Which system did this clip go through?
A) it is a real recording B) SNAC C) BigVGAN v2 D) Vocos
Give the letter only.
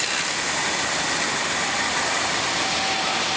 A